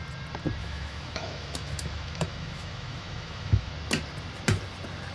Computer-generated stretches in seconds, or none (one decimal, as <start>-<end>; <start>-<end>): 0.6-3.7